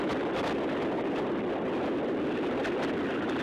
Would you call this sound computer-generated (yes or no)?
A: no